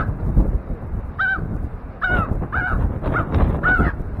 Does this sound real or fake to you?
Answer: real